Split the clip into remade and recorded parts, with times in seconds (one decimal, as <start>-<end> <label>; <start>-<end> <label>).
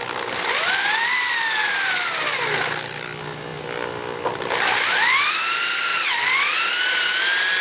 0.0-7.6 recorded